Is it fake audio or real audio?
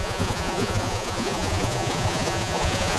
fake